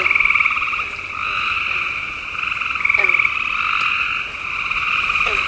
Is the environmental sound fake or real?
real